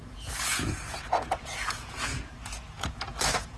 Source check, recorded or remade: remade